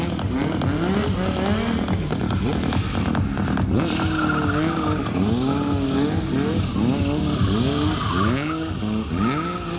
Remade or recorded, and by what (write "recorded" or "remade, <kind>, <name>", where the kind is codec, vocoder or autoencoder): recorded